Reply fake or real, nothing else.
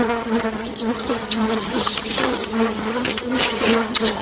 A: fake